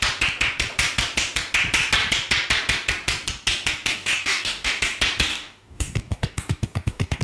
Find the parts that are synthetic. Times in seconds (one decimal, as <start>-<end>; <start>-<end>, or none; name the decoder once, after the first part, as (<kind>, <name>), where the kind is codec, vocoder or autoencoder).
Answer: 3.9-4.8 (codec, DAC); 5.3-7.2